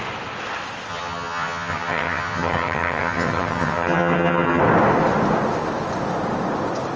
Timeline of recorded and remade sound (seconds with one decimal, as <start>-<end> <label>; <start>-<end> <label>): 0.0-0.9 recorded; 0.9-4.6 remade; 4.6-7.0 recorded